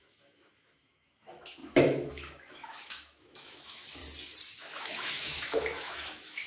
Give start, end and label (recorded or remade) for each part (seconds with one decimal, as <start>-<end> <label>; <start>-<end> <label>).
0.0-4.0 remade; 4.0-4.6 recorded; 4.6-6.5 remade